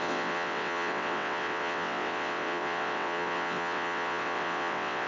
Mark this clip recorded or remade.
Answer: remade